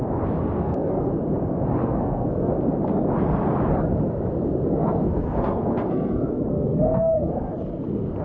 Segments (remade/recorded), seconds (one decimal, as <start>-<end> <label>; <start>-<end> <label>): 0.0-0.4 recorded; 0.4-1.1 remade; 1.1-1.8 recorded; 1.8-2.5 remade; 2.5-4.7 recorded; 4.7-7.5 remade; 7.5-8.2 recorded